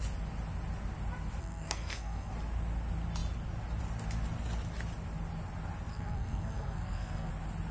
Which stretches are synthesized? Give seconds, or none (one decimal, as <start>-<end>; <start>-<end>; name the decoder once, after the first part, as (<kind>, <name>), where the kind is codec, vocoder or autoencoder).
1.4-2.3 (codec, SNAC); 5.9-7.3

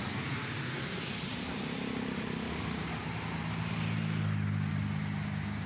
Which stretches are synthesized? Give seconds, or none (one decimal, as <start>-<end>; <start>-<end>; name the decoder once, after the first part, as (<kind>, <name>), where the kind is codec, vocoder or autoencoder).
none

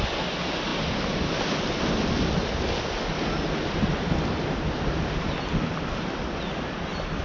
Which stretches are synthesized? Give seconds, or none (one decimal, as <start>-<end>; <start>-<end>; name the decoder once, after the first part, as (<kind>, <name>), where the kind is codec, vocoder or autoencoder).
none